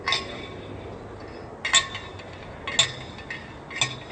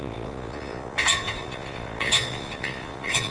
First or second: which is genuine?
first